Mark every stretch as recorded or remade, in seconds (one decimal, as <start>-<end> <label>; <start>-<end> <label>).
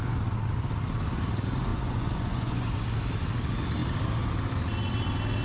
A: 0.0-1.7 recorded; 1.7-2.8 remade; 2.8-5.4 recorded